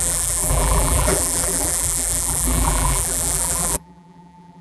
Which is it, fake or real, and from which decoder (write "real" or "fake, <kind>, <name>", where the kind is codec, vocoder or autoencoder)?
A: fake, vocoder, BigVGAN v2